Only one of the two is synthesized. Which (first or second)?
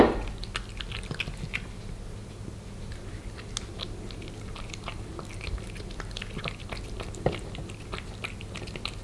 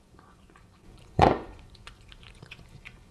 second